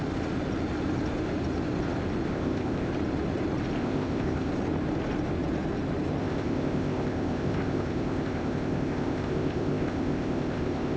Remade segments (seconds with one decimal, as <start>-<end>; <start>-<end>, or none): 2.3-2.9; 3.8-4.5; 6.2-11.0